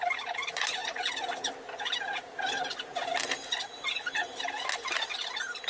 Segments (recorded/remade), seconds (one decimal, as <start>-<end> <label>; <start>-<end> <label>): 0.0-5.7 recorded